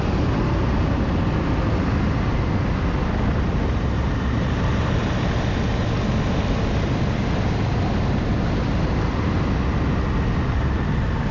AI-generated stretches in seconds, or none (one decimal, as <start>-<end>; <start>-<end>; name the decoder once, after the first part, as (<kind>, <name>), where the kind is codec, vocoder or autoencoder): none